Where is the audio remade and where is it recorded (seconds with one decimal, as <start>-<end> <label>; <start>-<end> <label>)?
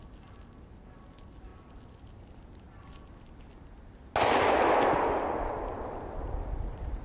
0.0-7.0 recorded